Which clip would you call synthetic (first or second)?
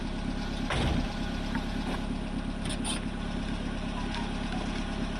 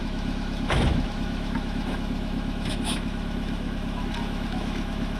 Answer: second